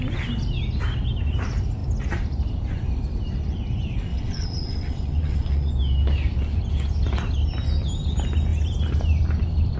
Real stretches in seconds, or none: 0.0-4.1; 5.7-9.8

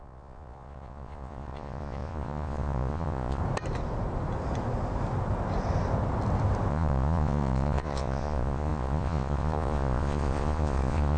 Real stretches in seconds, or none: 3.4-6.7

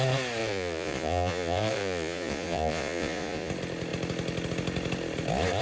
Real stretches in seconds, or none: 0.0-0.4; 3.5-5.6

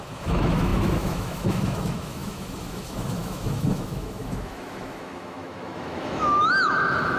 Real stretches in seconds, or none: none

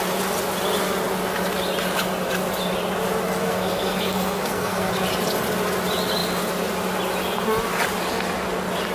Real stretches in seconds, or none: 0.0-3.4; 4.9-8.9

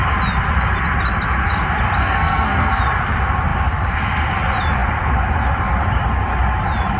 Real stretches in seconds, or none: 0.0-2.0; 2.8-7.0